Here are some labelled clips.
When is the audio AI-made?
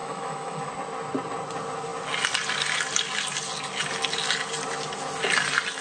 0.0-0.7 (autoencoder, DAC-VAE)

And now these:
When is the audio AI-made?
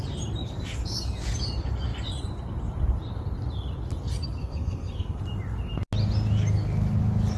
4.4-5.2 (codec, SNAC)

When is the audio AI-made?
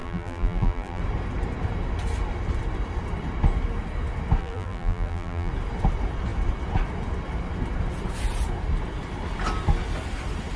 0.0-1.0 (vocoder, BigVGAN v2); 4.4-5.5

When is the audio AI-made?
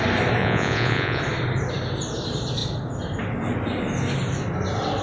0.4-1.2 (vocoder, Vocos)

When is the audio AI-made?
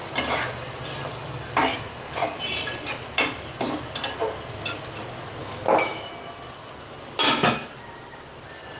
5.4-6.1 (autoencoder, DAC-VAE)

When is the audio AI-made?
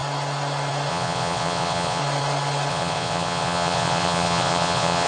0.9-2.0 (vocoder, Vocos); 2.7-5.1